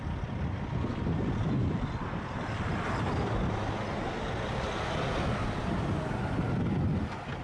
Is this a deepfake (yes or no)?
no